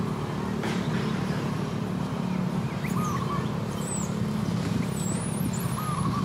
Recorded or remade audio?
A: recorded